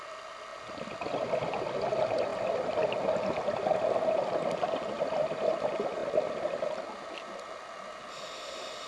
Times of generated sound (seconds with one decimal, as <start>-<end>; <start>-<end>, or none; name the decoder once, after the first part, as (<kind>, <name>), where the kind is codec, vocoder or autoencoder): none